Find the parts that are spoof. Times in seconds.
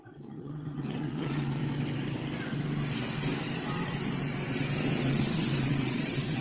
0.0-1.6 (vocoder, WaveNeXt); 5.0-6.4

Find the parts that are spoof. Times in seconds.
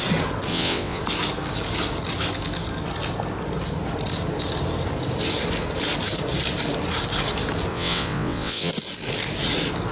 0.5-1.0 (vocoder, WaveNeXt); 7.7-8.7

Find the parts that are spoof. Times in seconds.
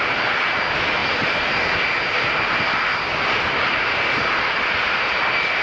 none